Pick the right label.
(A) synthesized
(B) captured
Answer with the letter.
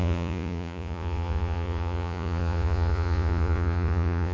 A